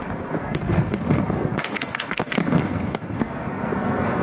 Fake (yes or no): yes